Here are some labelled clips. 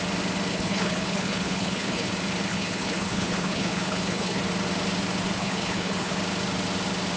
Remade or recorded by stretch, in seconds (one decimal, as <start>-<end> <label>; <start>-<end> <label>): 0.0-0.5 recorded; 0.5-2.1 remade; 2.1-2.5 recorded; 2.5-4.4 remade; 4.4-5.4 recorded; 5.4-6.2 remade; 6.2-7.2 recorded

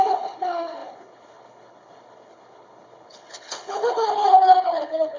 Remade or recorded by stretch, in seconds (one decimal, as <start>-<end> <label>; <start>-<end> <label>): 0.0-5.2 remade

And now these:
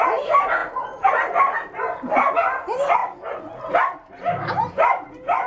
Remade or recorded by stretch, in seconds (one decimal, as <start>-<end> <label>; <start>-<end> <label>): 0.0-5.5 recorded

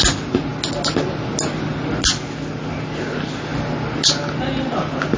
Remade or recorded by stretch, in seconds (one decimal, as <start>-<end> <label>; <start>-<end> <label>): 0.0-5.2 recorded

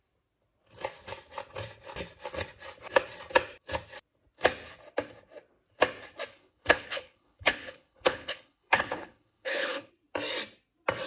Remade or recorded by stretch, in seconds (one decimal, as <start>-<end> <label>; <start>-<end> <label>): 0.0-6.3 recorded; 6.3-9.9 remade; 9.9-11.1 recorded